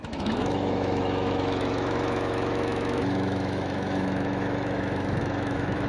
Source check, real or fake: fake